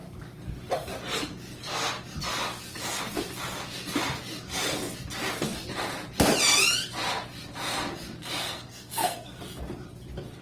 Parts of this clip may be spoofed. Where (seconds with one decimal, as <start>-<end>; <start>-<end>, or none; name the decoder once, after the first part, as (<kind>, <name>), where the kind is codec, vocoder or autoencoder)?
8.4-9.4 (codec, SNAC)